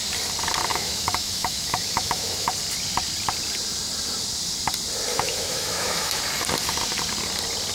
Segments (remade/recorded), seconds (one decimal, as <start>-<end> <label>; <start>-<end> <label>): 0.0-0.7 recorded; 0.7-2.5 remade; 2.5-5.1 recorded; 5.1-6.2 remade; 6.2-7.7 recorded